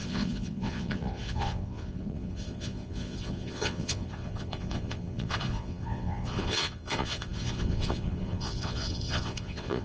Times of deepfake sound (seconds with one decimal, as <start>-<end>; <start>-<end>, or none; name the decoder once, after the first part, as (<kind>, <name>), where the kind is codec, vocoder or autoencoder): 0.0-9.8 (vocoder, Vocos)